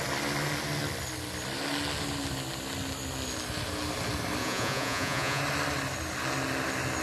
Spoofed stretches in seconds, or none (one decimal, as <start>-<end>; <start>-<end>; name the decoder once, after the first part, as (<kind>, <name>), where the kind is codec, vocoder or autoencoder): 4.4-5.4 (vocoder, Vocos)

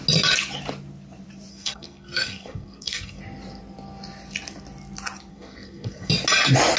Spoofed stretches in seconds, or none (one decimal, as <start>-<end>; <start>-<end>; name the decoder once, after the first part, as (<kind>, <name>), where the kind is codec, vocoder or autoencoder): 1.5-3.2 (codec, SNAC); 5.3-6.1

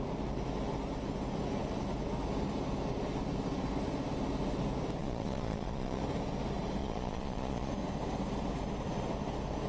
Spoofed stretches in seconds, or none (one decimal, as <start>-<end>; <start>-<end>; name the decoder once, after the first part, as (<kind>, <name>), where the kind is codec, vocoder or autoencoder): 5.0-6.0 (vocoder, Vocos); 6.8-7.7

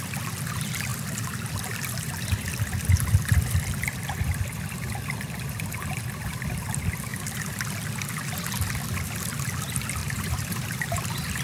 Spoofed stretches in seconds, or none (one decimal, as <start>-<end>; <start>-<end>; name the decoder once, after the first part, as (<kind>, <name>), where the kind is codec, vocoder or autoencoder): 10.0-11.0 (vocoder, BigVGAN v2)